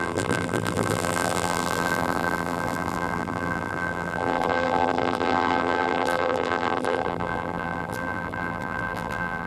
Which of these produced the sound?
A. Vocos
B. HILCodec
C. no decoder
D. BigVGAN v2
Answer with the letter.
D